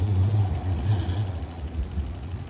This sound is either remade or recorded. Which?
remade